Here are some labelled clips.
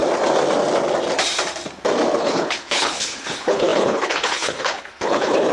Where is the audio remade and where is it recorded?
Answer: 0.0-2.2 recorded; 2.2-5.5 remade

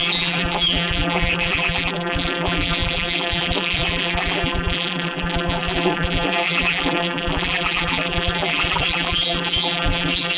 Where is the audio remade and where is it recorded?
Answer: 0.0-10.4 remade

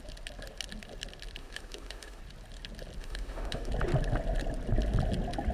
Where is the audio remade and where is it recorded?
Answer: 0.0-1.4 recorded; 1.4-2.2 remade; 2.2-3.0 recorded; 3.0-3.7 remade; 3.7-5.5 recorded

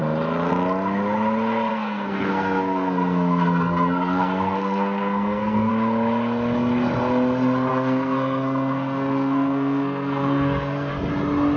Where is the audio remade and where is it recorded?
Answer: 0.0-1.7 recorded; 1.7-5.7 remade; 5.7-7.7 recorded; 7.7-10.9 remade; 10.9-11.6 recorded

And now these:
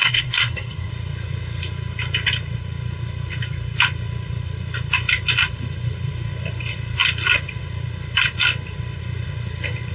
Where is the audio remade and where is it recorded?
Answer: 0.0-0.9 remade; 0.9-9.9 recorded